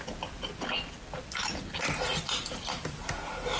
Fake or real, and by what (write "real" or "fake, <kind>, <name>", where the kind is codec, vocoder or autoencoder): real